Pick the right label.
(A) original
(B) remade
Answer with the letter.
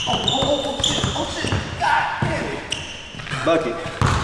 A